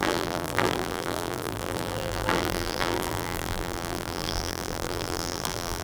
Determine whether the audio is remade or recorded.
remade